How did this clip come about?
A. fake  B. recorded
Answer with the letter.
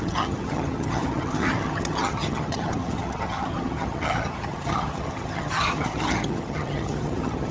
A